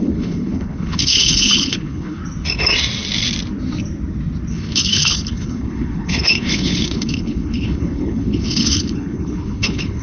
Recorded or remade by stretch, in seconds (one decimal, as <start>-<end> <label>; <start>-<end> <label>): 0.0-2.2 remade; 2.2-4.5 recorded; 4.5-10.0 remade